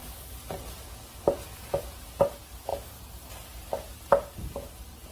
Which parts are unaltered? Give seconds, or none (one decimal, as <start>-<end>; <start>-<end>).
0.0-5.1